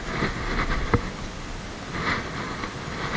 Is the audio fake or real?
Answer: real